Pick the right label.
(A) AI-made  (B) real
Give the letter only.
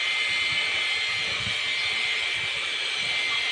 B